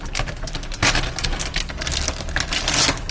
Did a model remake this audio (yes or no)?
no